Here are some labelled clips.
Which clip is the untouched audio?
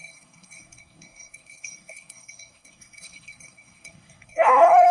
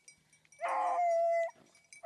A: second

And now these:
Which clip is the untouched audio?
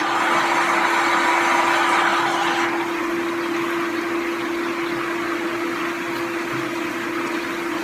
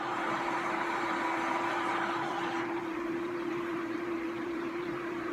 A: first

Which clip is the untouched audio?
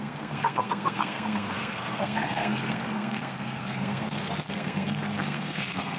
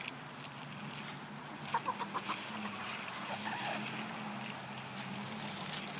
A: second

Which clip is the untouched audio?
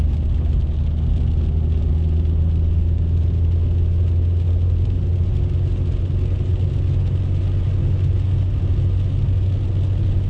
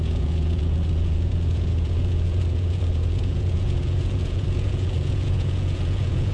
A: first